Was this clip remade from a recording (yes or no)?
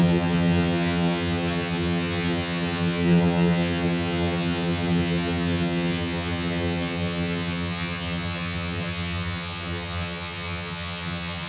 yes